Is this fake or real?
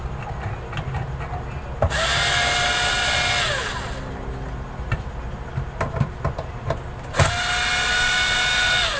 real